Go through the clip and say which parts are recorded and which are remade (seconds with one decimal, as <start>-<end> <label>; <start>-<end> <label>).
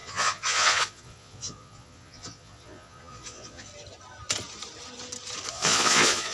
0.0-3.7 remade; 3.7-5.5 recorded; 5.5-6.3 remade